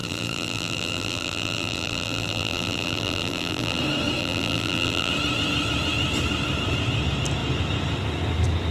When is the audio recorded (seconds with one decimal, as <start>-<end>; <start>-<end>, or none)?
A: 3.8-4.2; 5.1-8.7